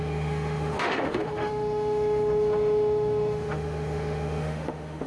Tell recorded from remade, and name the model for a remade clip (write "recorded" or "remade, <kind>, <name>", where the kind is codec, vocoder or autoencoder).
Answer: remade, autoencoder, DAC-VAE